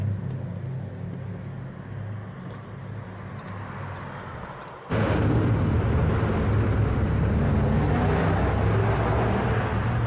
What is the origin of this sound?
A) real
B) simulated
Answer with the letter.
A